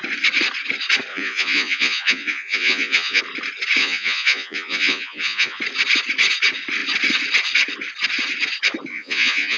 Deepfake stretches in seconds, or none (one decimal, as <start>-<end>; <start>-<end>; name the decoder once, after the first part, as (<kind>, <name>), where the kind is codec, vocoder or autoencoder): 1.1-3.2 (vocoder, Vocos); 3.8-5.6; 8.9-9.6